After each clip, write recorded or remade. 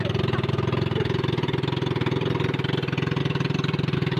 remade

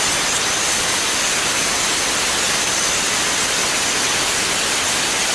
recorded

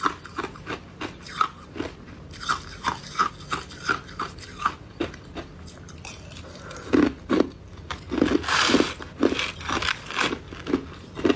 recorded